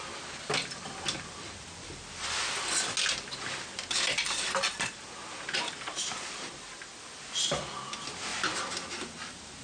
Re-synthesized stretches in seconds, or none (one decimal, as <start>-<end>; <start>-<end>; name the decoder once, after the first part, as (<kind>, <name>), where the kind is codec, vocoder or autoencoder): none